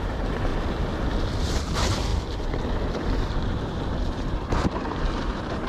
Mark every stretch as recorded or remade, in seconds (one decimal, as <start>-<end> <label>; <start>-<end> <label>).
0.0-0.5 remade; 0.5-1.4 recorded; 1.4-2.1 remade; 2.1-2.9 recorded; 2.9-5.7 remade